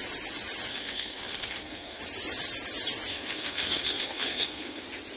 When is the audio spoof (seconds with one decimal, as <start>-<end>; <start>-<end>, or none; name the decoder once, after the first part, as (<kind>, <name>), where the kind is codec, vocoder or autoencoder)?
0.7-2.0 (codec, SNAC); 3.1-4.8